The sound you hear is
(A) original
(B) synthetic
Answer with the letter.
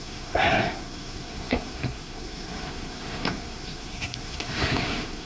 B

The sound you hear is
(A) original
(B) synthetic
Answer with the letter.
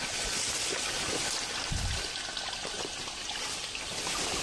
A